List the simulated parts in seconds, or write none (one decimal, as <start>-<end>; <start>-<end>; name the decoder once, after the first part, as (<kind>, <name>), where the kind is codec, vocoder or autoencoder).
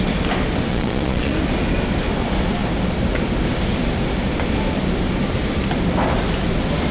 0.7-1.3 (vocoder, Vocos)